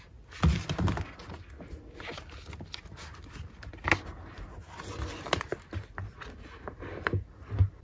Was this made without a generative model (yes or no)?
yes